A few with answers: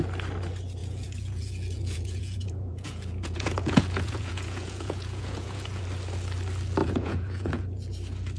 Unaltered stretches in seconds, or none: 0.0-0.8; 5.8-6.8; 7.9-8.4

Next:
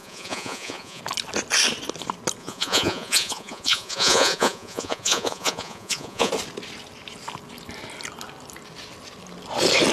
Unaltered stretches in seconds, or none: 1.0-2.4; 6.3-9.9

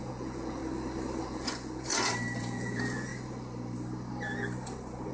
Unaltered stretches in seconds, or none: 0.6-1.2; 1.9-2.4; 3.1-5.1

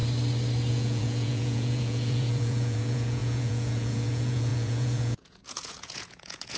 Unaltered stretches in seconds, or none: 0.0-0.7

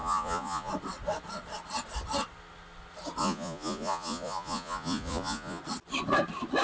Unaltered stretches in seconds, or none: 0.7-3.2; 5.6-6.6

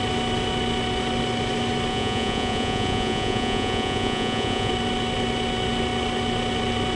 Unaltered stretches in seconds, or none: 0.0-1.9; 4.7-7.0

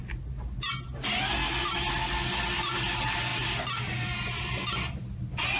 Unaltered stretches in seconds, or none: 0.0-5.6

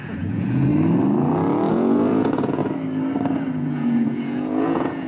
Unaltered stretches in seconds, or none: 0.7-1.7; 2.6-3.5